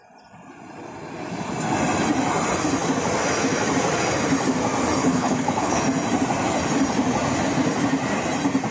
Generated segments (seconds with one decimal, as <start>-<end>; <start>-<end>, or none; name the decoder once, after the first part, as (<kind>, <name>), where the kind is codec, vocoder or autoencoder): 5.0-5.8 (codec, HILCodec)